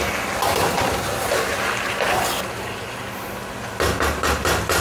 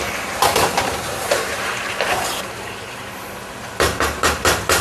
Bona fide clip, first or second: first